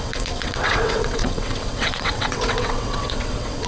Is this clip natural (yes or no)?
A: no